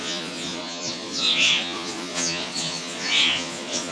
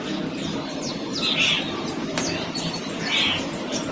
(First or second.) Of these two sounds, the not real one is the first